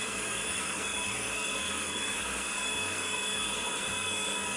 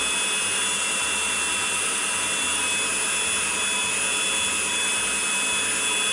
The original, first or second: second